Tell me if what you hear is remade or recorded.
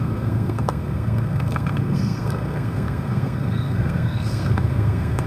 remade